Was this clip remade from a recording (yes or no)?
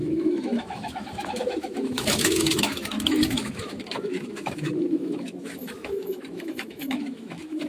yes